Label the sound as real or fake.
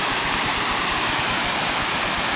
real